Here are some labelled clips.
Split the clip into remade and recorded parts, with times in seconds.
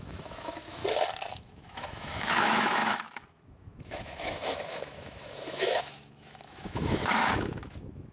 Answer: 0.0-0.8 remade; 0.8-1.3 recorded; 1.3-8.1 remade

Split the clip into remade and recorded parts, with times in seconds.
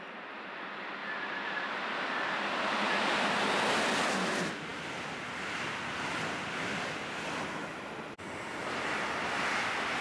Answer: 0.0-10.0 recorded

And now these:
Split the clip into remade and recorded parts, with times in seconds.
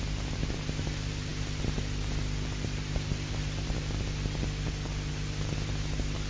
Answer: 0.0-6.3 recorded